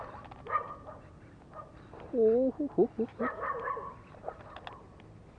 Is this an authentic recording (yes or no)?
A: yes